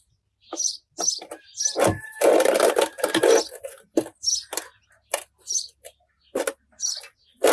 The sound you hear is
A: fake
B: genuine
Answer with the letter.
B